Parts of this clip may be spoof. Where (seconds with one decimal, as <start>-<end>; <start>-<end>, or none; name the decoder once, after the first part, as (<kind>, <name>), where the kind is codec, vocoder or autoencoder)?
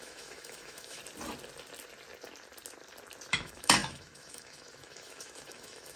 0.0-1.0 (autoencoder, DAC-VAE); 3.3-6.0